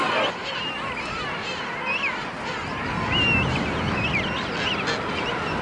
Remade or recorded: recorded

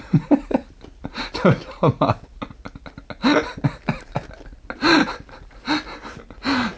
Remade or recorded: recorded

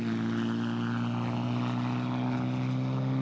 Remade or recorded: recorded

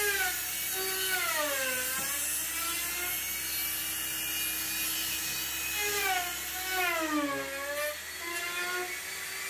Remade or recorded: recorded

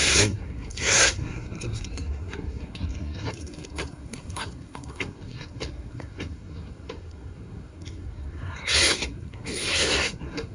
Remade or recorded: remade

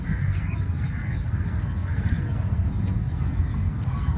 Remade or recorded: remade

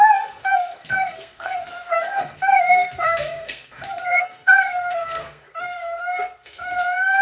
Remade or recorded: remade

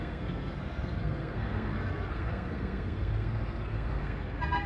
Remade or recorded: remade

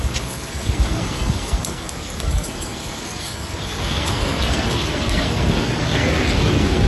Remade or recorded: remade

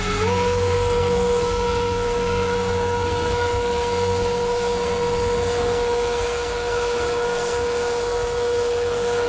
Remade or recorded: remade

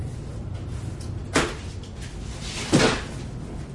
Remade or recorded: recorded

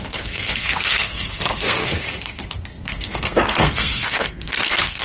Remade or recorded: remade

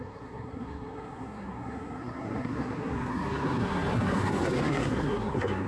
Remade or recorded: remade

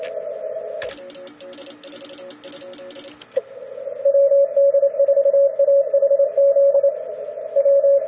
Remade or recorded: recorded